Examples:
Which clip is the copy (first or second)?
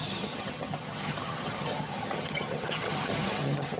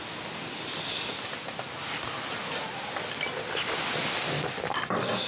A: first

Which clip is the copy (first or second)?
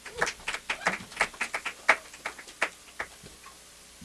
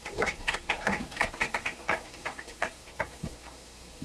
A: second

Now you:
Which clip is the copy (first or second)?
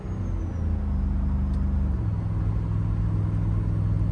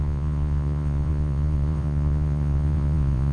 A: second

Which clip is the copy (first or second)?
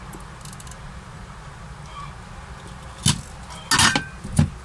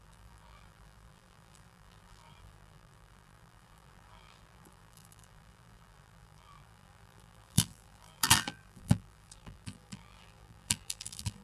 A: second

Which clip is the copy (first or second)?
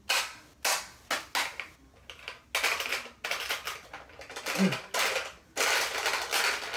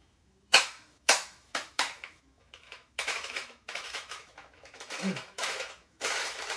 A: second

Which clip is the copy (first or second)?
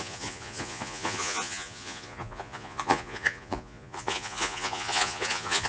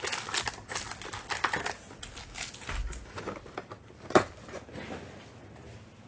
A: first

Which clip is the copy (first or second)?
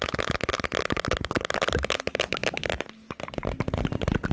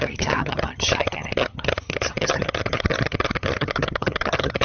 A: second